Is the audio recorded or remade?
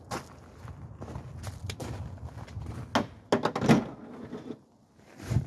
recorded